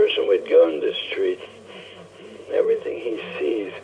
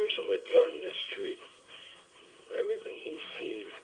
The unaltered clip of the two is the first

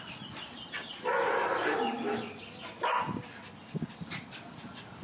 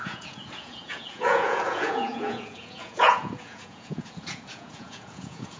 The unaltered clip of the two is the first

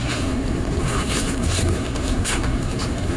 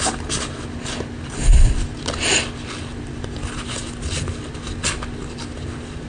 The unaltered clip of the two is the second